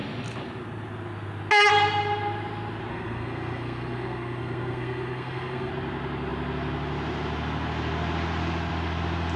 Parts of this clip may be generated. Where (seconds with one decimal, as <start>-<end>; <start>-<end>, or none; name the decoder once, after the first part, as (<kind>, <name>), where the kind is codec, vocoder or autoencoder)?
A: 2.9-5.7 (codec, SNAC)